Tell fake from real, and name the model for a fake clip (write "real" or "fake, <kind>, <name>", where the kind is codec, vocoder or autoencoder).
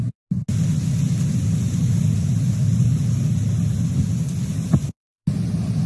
real